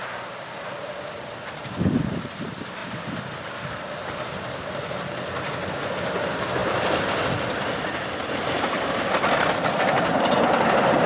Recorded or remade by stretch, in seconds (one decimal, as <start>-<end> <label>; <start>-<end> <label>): 0.0-11.1 recorded